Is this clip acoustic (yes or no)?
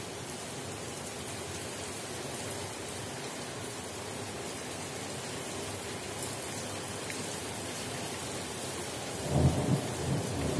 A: yes